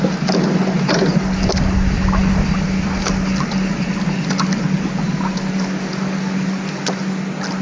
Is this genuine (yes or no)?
yes